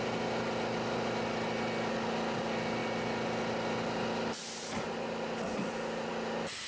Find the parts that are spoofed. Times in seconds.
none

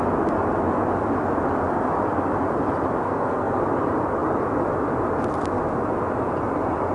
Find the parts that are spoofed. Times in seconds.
3.0-3.6 (codec, SNAC)

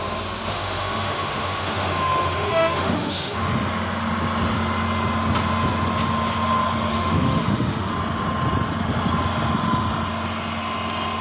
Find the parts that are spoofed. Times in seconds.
0.5-3.7 (autoencoder, DAC-VAE); 6.9-7.9

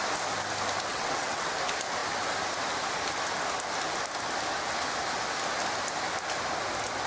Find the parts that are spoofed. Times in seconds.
0.9-1.5 (vocoder, WaveNeXt)

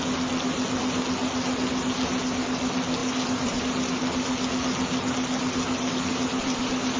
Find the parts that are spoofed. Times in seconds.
3.0-3.6 (vocoder, BigVGAN v2); 6.1-7.0